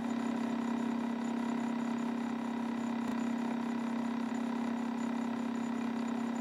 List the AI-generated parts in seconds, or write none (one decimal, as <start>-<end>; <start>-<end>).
none